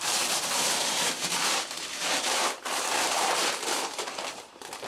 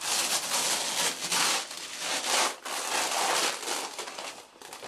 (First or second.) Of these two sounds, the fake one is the first